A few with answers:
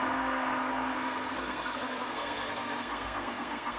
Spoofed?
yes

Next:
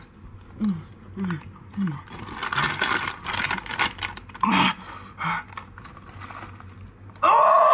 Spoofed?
no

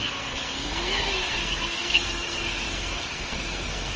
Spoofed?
yes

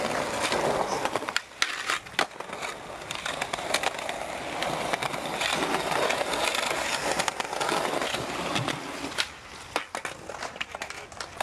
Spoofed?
no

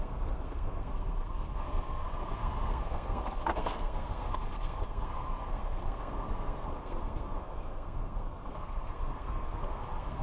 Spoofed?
yes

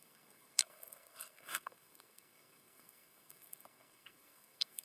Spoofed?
yes